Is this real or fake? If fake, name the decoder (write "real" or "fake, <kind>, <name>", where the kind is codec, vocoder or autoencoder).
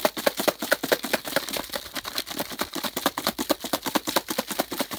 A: fake, vocoder, BigVGAN v2